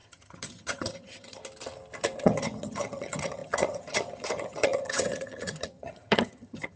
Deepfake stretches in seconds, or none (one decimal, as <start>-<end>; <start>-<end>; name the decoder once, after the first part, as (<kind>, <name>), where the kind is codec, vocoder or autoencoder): 0.0-1.4 (vocoder, HiFi-GAN); 2.2-6.8